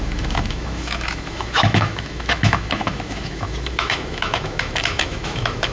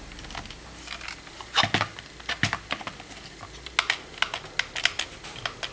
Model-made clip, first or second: first